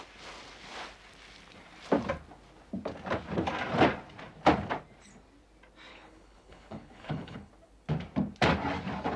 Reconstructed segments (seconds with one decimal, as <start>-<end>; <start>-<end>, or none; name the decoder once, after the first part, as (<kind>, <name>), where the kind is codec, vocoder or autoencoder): 5.9-7.5 (codec, HILCodec)